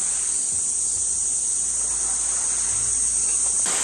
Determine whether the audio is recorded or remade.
recorded